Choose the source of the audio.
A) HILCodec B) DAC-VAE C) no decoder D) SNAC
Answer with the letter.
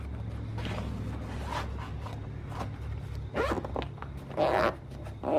C